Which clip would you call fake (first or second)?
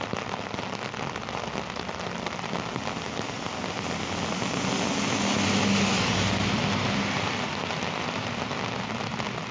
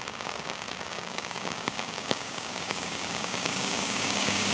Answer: second